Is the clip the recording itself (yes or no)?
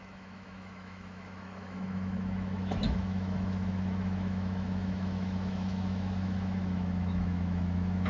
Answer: no